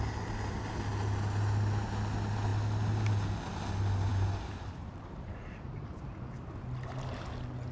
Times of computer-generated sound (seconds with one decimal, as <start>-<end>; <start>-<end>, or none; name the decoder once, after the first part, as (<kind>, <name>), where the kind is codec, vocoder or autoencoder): 4.1-6.0 (vocoder, BigVGAN v2)